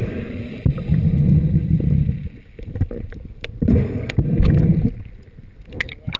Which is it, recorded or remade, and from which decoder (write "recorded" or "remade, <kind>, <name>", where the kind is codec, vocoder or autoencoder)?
recorded